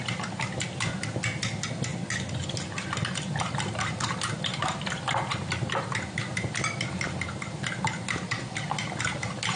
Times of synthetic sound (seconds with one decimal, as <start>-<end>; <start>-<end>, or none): none